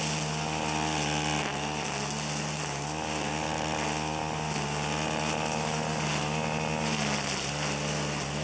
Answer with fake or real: real